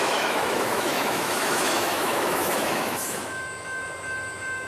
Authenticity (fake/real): fake